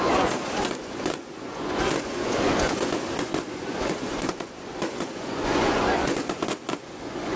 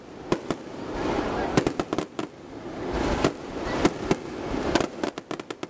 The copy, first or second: first